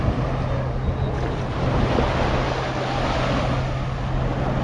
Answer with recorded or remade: recorded